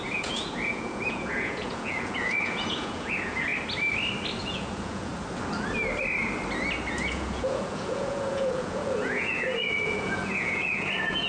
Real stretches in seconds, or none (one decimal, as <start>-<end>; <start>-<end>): 3.5-4.4; 5.1-6.9